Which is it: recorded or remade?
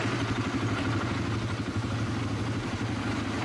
recorded